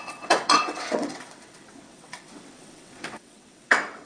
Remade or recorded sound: remade